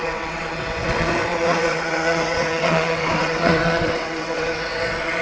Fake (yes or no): yes